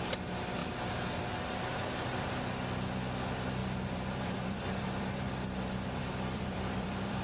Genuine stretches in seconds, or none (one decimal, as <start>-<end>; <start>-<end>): 0.0-0.6; 1.2-3.6